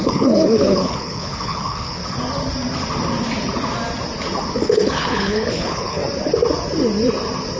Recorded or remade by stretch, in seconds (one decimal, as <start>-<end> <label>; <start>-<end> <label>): 0.0-2.0 remade; 2.0-4.5 recorded; 4.5-6.0 remade; 6.0-7.6 recorded